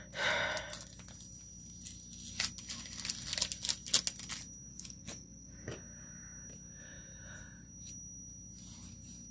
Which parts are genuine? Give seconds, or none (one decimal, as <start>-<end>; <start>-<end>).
0.0-4.7; 5.7-9.3